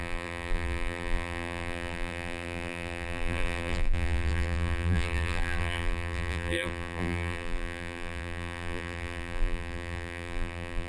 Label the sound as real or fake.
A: fake